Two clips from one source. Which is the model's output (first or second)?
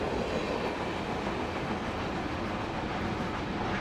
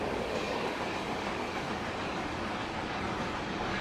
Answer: second